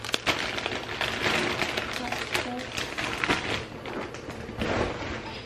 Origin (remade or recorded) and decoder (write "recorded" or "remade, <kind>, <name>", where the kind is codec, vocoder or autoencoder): recorded